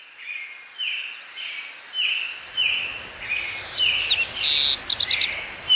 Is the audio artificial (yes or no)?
no